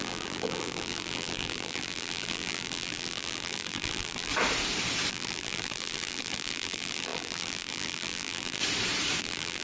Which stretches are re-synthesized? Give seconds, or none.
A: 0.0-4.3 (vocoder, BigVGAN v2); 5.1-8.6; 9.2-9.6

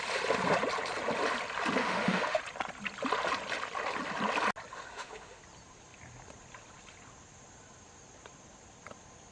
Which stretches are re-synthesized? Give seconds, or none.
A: 1.8-2.4 (autoencoder, DAC-VAE); 4.7-5.4

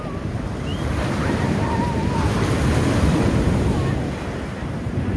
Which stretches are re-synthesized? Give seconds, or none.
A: none

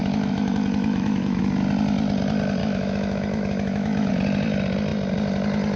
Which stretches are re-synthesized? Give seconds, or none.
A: 0.0-1.4 (autoencoder, DAC-VAE); 2.6-4.1

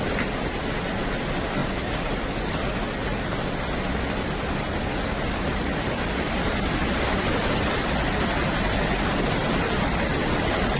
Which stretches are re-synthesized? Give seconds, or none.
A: none

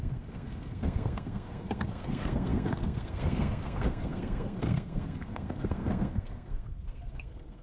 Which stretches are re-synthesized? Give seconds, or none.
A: 0.0-7.6 (codec, SNAC)

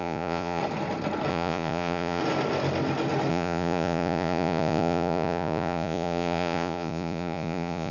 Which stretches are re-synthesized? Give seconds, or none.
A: 0.0-0.6 (vocoder, Vocos); 1.3-2.2; 3.3-7.9

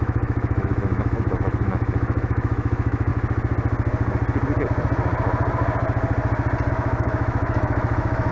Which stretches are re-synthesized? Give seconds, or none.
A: 0.0-3.1 (autoencoder, DAC-VAE); 6.7-8.3